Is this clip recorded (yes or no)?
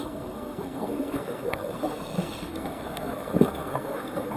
no